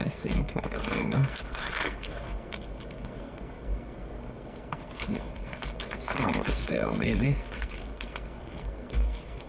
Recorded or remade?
remade